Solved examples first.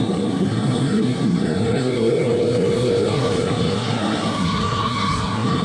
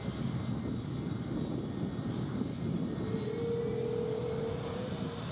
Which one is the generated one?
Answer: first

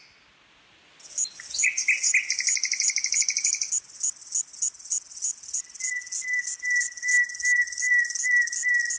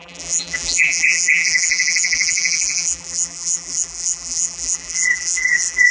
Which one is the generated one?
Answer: second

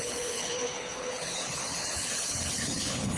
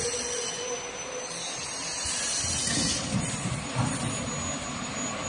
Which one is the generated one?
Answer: first